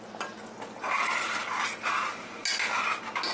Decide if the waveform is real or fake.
real